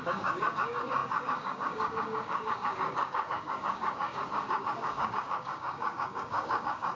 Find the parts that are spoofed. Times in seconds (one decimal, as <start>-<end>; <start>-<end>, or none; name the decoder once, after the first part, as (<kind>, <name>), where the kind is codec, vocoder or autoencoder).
0.0-6.9 (codec, DAC)

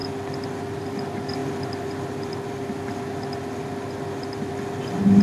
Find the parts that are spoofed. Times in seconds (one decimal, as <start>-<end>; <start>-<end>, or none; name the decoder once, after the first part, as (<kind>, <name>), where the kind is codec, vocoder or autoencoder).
none

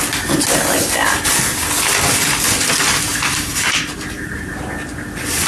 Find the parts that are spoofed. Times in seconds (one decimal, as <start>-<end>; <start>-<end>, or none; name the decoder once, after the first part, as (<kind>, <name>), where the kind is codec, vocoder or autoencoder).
3.1-4.7 (vocoder, BigVGAN v2)

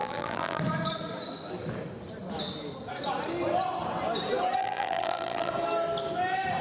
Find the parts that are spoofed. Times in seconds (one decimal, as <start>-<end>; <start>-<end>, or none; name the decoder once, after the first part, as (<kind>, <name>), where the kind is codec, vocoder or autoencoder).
0.0-0.6 (vocoder, BigVGAN v2); 4.6-5.5